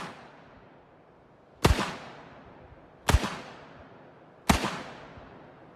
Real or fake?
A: real